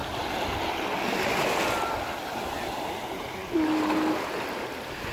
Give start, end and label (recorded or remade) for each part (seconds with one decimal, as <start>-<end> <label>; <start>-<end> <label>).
0.0-5.1 recorded